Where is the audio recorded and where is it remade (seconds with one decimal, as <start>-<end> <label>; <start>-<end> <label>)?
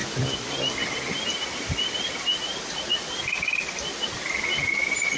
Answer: 0.0-5.2 recorded